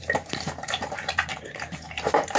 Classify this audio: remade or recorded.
remade